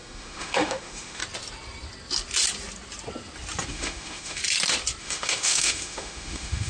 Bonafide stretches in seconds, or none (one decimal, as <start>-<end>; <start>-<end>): 1.2-3.7; 4.4-5.0